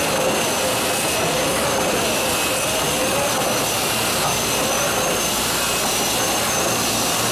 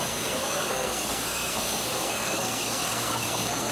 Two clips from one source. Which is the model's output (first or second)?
second